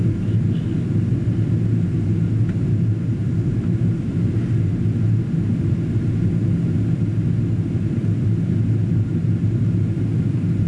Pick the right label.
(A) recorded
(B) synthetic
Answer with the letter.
A